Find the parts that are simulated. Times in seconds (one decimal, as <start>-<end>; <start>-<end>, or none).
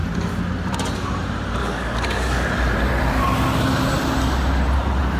1.6-2.5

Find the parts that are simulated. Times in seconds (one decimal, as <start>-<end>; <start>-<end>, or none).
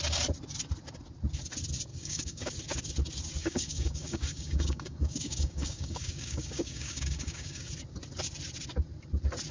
1.9-2.5; 3.4-7.7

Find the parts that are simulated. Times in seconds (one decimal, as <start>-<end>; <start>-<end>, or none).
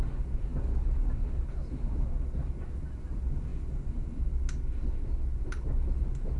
none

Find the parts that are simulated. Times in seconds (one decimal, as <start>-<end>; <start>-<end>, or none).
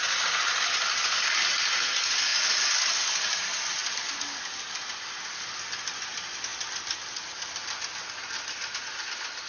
none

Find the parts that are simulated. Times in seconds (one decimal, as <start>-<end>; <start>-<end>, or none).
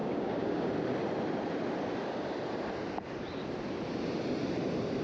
0.0-0.7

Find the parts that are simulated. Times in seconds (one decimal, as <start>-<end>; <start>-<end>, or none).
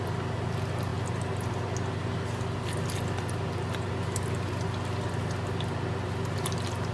none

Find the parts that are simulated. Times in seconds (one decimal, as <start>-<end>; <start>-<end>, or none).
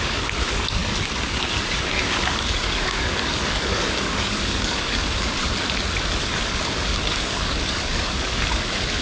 0.0-5.4; 6.2-9.0